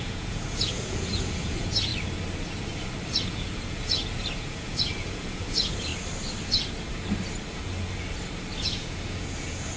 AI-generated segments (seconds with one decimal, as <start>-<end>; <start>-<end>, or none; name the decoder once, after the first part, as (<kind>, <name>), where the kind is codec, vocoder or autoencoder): 0.0-1.9 (vocoder, Vocos); 3.2-5.9; 8.6-9.8